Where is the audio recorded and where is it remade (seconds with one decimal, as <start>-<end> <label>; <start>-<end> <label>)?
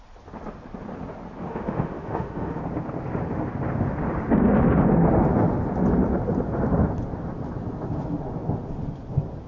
0.0-1.5 recorded; 1.5-2.6 remade; 2.6-9.5 recorded